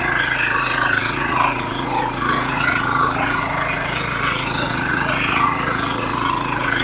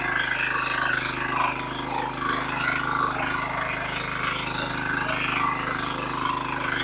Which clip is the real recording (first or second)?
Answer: second